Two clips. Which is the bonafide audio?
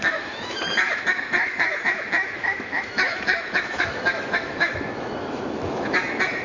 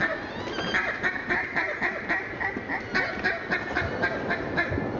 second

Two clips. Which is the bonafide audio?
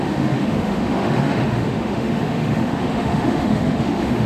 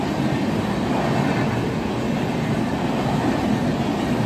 second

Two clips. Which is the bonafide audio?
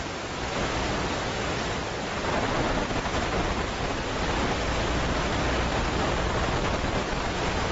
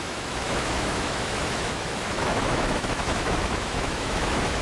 first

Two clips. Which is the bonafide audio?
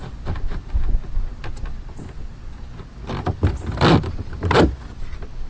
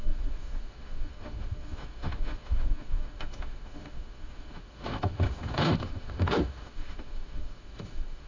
first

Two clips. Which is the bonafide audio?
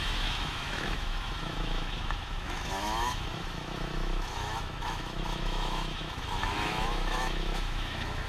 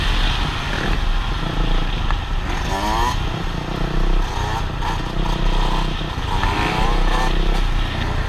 second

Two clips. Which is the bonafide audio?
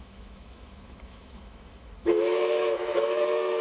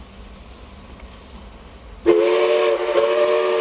second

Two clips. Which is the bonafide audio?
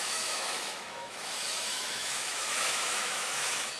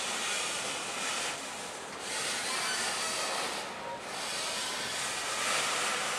second